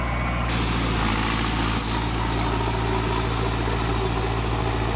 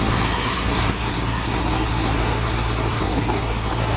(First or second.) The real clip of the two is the first